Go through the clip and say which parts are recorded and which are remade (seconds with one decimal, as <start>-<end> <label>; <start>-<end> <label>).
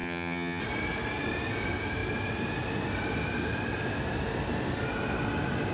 0.0-0.6 remade; 0.6-5.7 recorded